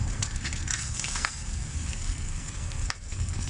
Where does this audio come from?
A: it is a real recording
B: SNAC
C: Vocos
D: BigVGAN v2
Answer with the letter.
B